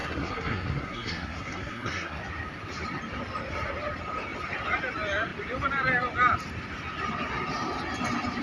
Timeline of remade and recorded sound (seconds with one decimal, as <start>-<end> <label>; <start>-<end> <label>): 0.0-2.2 remade; 2.2-8.4 recorded